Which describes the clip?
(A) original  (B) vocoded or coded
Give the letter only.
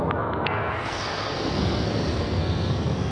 B